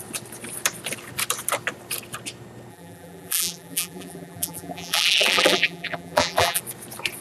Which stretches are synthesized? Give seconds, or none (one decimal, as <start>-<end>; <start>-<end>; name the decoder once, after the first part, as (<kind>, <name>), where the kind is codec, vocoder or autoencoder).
2.7-6.6 (vocoder, BigVGAN v2)